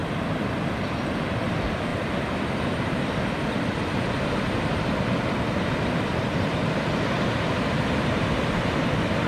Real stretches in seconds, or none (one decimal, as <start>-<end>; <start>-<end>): 0.0-9.3